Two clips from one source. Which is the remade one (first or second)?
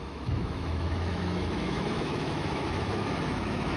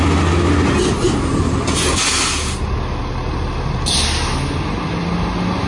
first